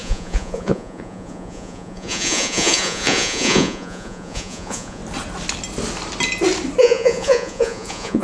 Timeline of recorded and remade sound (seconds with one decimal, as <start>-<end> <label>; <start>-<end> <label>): 0.0-5.0 remade; 5.0-6.8 recorded; 6.8-8.2 remade